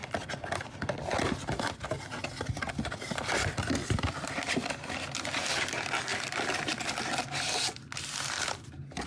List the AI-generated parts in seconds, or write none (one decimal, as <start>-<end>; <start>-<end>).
none